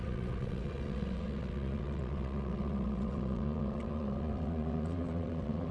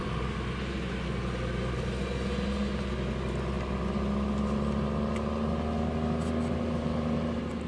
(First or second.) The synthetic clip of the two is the first